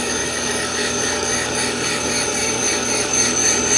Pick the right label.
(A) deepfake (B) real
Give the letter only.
A